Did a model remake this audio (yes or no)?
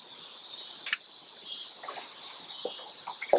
no